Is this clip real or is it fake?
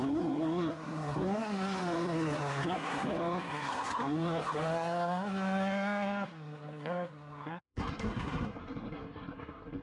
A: fake